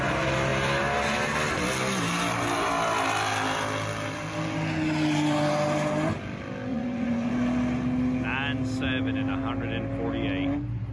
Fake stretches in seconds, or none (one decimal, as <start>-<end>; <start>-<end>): 6.7-7.3